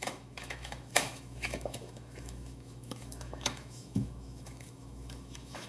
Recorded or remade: remade